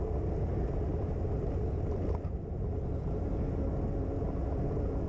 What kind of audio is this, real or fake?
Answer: real